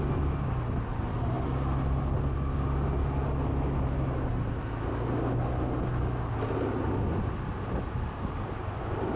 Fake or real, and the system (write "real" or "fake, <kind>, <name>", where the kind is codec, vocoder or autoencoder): real